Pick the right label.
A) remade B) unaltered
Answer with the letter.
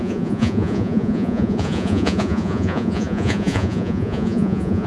A